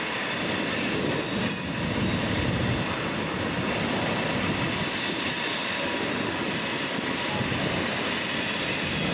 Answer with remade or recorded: recorded